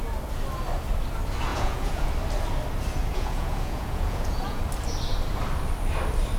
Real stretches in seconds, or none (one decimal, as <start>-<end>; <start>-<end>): 0.0-1.5; 2.1-3.0; 4.6-6.4